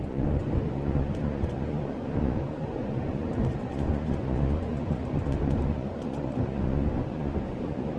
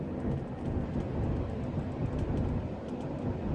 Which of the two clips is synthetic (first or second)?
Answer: first